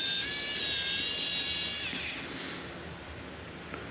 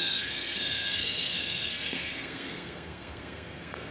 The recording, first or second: first